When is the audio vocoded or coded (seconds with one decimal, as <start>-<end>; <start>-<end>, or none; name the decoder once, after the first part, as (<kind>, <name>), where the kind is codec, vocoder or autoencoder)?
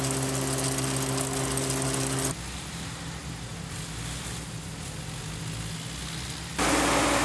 none